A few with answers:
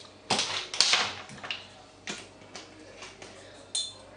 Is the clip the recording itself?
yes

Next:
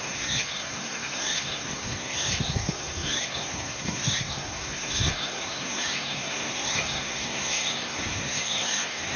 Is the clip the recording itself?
no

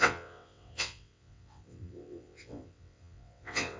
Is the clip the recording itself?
no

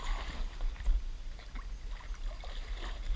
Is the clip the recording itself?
yes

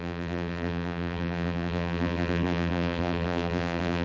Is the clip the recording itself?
no